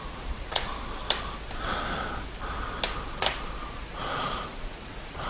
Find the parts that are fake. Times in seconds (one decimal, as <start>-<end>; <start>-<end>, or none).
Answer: 0.0-0.7; 3.9-5.3